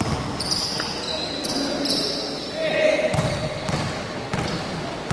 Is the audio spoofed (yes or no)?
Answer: no